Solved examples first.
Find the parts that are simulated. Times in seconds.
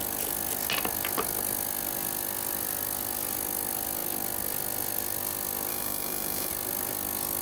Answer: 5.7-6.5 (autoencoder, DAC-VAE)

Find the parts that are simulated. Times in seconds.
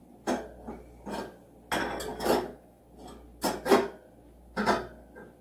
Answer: 2.1-2.8 (autoencoder, DAC-VAE)